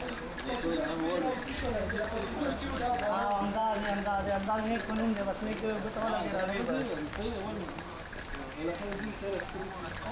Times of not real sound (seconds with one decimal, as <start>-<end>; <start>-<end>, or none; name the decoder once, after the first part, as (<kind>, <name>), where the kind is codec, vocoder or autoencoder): none